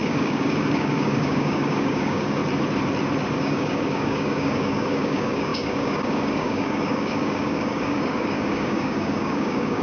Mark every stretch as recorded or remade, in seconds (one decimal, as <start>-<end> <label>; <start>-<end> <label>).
0.0-2.4 remade; 2.4-3.3 recorded; 3.3-9.8 remade